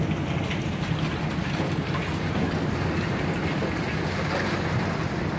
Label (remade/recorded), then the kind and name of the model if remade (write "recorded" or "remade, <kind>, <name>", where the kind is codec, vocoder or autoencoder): recorded